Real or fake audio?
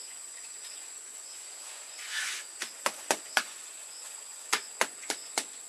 fake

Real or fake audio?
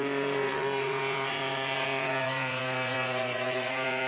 fake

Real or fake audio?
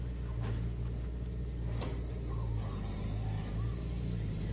real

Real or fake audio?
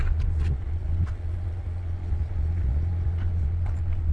fake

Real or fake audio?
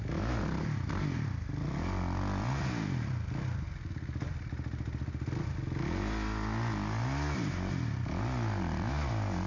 real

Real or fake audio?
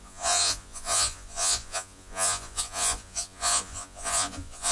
fake